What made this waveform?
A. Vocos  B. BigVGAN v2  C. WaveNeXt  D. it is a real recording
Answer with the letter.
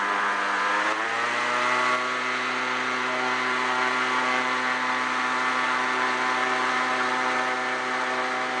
B